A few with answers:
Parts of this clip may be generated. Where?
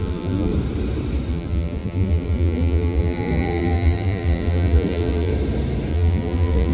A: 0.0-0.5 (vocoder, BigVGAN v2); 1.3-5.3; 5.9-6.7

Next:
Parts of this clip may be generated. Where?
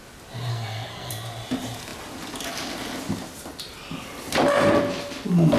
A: 0.5-1.1 (codec, SNAC)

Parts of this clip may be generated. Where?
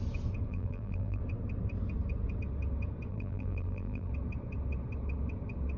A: 0.5-1.2 (vocoder, BigVGAN v2); 3.1-4.1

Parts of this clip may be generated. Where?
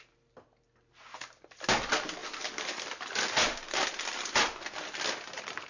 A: none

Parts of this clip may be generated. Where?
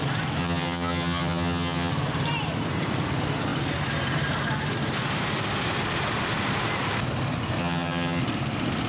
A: 0.4-1.9 (vocoder, HiFi-GAN); 7.6-8.2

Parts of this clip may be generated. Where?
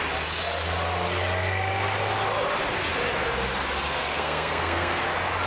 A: 4.0-5.0 (codec, SNAC)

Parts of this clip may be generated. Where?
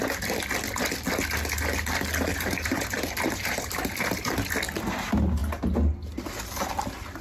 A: 2.3-4.5 (vocoder, BigVGAN v2)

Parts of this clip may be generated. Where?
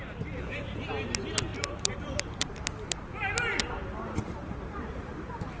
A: 1.5-2.5 (vocoder, BigVGAN v2); 3.4-5.6